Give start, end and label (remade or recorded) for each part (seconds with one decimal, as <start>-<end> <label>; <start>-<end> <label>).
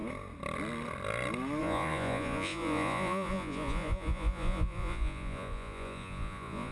0.0-1.6 recorded; 1.6-6.7 remade